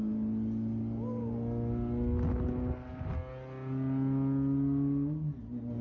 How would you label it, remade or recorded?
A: recorded